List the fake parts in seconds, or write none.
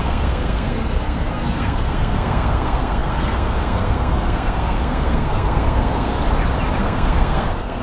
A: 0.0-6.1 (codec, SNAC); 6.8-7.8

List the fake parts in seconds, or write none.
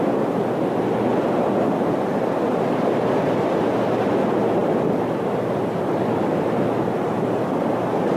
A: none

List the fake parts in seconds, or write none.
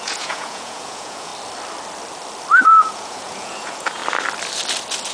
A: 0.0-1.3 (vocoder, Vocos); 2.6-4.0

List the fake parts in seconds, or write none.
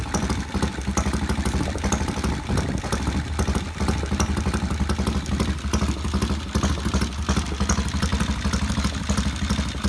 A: none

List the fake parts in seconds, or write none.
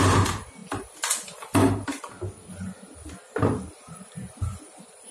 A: 0.0-0.6 (vocoder, BigVGAN v2); 3.7-5.1